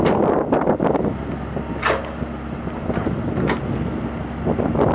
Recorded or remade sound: recorded